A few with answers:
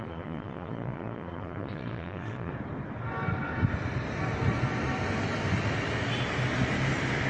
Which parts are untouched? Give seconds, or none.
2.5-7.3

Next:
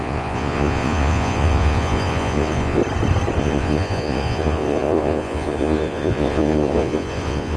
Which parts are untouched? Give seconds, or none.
2.8-3.4

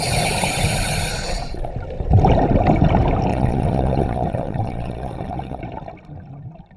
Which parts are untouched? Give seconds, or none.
0.0-1.1; 1.7-3.3; 5.6-6.8

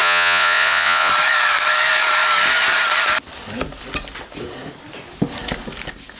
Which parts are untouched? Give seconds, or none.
1.1-6.2

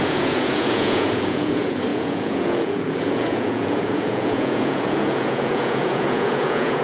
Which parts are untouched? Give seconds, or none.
none

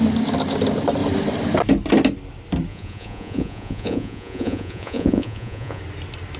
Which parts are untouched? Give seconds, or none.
0.0-2.7; 5.8-6.4